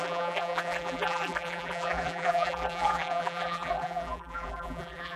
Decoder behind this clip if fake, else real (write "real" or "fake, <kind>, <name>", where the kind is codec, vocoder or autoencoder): fake, vocoder, BigVGAN v2